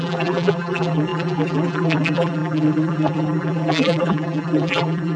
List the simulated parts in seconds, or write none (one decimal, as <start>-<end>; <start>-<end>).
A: 0.0-5.2